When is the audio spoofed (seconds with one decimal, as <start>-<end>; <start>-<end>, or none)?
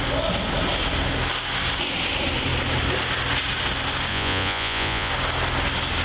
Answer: 4.1-5.1